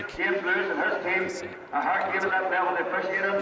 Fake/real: fake